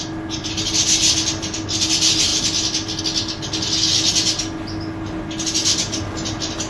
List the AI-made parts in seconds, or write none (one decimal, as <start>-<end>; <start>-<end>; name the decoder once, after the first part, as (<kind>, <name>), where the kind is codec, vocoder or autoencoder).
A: none